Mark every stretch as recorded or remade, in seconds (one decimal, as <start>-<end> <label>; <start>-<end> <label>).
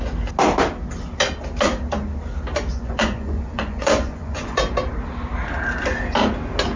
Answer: 0.0-2.7 recorded; 2.7-4.6 remade; 4.6-6.8 recorded